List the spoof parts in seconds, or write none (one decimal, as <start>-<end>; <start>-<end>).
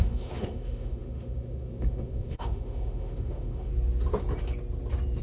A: 0.0-3.7